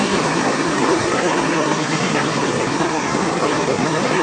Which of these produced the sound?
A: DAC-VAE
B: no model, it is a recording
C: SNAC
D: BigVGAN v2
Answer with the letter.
C